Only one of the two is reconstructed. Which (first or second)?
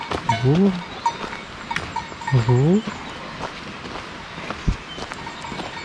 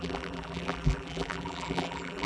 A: second